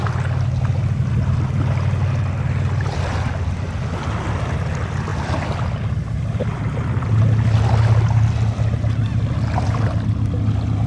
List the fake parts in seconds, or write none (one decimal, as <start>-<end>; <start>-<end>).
none